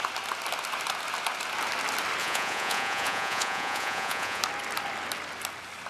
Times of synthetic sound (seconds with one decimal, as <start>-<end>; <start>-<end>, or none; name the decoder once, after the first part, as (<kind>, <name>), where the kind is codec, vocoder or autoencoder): 2.2-4.4 (vocoder, Vocos)